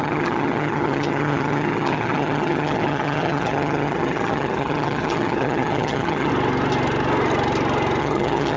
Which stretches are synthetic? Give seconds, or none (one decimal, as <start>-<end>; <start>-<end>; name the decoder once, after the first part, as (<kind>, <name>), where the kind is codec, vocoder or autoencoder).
0.0-6.3 (vocoder, HiFi-GAN); 8.0-8.6